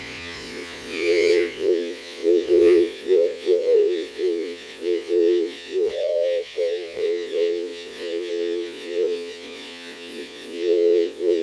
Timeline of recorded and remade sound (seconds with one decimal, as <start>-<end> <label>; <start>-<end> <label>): 0.0-11.4 remade